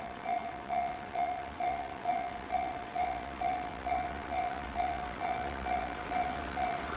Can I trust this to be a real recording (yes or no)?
no